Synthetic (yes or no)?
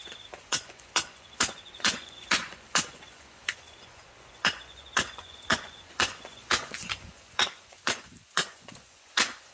yes